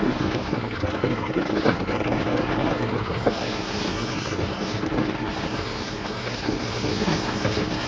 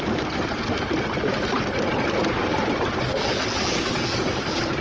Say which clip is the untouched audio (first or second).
second